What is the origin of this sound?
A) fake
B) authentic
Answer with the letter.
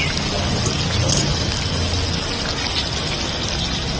B